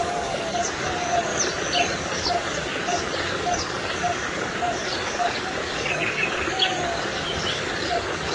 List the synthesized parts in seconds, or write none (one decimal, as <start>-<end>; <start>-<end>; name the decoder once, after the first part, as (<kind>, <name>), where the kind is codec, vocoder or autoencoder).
0.0-1.3 (codec, DAC); 1.9-8.3